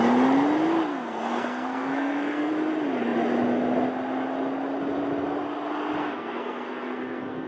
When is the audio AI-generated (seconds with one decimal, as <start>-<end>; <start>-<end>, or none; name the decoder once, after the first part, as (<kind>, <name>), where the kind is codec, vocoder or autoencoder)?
0.9-2.5 (codec, SNAC); 6.0-7.5